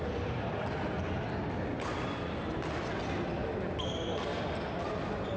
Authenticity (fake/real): real